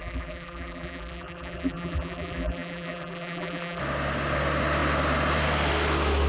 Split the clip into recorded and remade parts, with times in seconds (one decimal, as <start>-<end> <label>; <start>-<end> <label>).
0.0-3.8 remade; 3.8-6.3 recorded